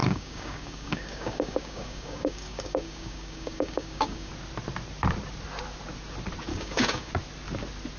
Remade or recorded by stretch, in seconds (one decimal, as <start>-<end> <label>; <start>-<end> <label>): 0.0-4.3 remade; 4.3-6.5 recorded; 6.5-7.1 remade; 7.1-8.0 recorded